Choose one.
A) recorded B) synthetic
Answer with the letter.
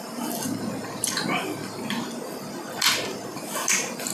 A